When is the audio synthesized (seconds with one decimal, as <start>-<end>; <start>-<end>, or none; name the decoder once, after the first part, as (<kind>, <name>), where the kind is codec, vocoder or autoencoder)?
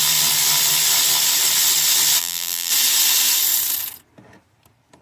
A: 2.2-2.7 (vocoder, BigVGAN v2)